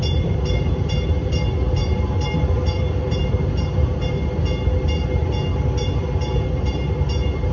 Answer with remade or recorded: recorded